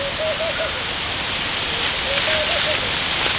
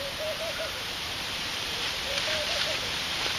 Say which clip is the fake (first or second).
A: second